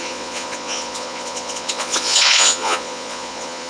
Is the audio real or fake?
fake